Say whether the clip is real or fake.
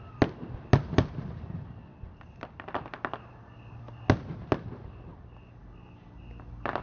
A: real